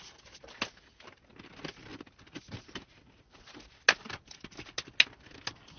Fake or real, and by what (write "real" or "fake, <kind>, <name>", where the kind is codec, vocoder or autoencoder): real